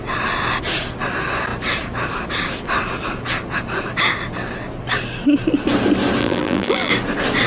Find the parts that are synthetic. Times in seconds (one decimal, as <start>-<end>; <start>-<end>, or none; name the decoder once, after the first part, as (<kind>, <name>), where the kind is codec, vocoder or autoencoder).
6.2-6.9 (vocoder, BigVGAN v2)